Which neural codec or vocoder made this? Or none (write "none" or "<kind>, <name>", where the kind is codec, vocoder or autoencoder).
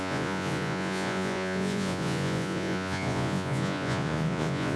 vocoder, Vocos